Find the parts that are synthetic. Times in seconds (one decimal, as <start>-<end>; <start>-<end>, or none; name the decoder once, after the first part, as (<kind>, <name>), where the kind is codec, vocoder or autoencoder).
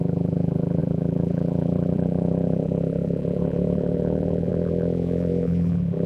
0.0-6.1 (vocoder, BigVGAN v2)